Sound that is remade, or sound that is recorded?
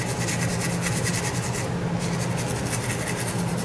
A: recorded